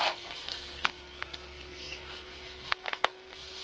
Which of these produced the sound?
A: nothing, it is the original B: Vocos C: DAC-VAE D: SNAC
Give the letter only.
D